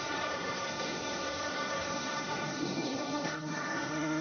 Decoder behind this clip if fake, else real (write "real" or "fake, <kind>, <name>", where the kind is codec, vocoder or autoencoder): fake, codec, SNAC